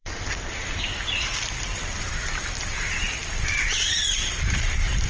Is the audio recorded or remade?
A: remade